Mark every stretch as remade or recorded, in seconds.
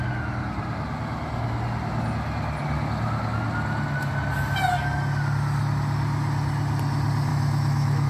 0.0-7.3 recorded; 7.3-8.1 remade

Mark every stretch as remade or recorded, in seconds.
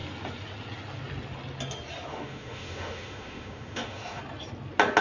0.0-2.1 recorded; 2.1-4.2 remade; 4.2-5.0 recorded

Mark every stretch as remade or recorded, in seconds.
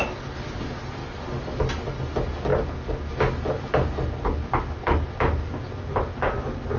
0.0-6.8 recorded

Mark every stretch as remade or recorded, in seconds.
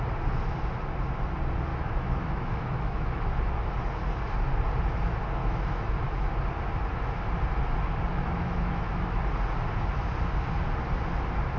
0.0-1.7 recorded; 1.7-3.2 remade; 3.2-5.4 recorded; 5.4-5.9 remade; 5.9-8.1 recorded; 8.1-9.2 remade; 9.2-11.6 recorded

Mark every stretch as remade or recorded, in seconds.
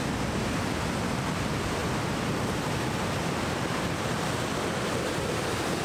0.0-5.8 recorded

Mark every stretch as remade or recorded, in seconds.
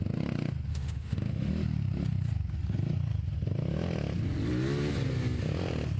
0.0-0.7 recorded; 0.7-1.5 remade; 1.5-6.0 recorded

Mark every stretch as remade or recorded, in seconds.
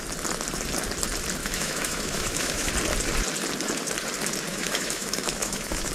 0.0-1.4 recorded; 1.4-2.7 remade; 2.7-4.5 recorded; 4.5-5.9 remade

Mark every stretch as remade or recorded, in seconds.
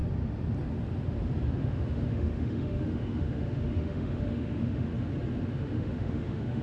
0.0-1.6 recorded; 1.6-4.9 remade; 4.9-5.6 recorded; 5.6-6.6 remade